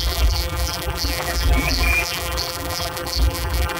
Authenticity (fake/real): fake